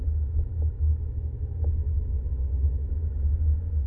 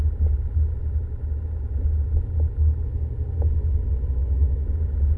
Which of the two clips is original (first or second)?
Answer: second